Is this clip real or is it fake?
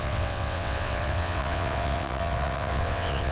fake